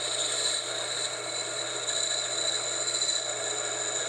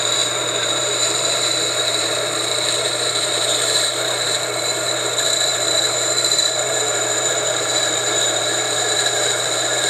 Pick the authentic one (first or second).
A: first